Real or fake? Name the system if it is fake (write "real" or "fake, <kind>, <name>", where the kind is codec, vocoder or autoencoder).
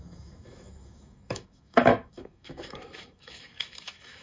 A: fake, autoencoder, DAC-VAE